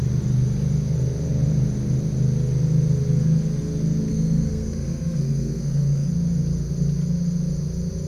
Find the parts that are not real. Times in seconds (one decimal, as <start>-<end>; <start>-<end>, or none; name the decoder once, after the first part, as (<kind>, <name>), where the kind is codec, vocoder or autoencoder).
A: 4.1-6.1 (codec, SNAC)